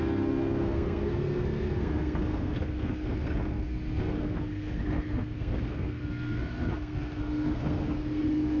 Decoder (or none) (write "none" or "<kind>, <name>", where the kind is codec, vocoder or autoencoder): codec, SNAC